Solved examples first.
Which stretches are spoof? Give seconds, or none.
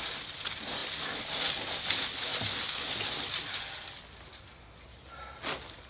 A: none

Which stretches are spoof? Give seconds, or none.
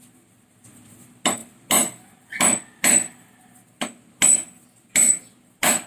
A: none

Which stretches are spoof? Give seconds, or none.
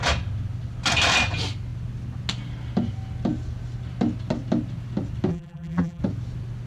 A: 5.3-6.0 (vocoder, BigVGAN v2)